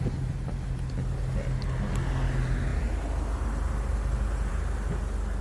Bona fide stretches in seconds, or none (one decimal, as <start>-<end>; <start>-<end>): 0.0-5.4